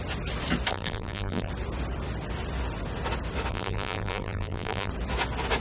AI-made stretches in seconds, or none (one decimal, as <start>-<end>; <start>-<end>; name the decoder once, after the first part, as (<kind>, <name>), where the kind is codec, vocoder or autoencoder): 0.7-1.5 (vocoder, BigVGAN v2); 3.5-4.9

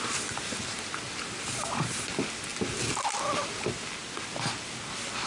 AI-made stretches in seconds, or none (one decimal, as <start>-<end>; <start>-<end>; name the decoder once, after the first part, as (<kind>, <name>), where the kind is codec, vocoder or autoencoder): none

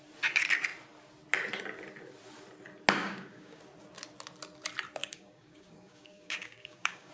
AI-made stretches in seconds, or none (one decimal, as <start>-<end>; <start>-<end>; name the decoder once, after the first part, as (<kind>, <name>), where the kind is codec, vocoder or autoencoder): 3.0-3.6 (codec, DAC); 5.0-7.1

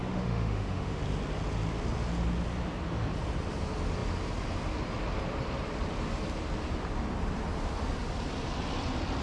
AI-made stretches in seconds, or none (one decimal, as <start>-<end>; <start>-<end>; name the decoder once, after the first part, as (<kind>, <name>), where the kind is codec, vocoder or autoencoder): 0.0-1.0 (autoencoder, DAC-VAE)

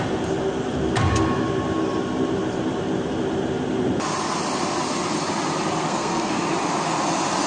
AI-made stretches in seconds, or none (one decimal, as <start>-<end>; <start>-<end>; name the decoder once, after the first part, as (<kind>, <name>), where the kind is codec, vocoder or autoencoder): 5.8-6.4 (codec, SNAC)

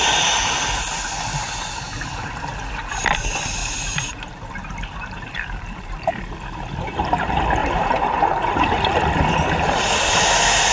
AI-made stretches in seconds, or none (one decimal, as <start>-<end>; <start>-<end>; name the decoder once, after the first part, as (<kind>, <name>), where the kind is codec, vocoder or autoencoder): 3.6-6.3 (vocoder, BigVGAN v2); 7.6-8.6

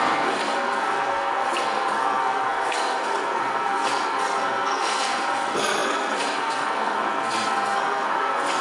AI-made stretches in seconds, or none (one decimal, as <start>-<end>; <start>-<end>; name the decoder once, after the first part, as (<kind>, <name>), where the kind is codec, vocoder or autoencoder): 0.0-8.6 (codec, SNAC)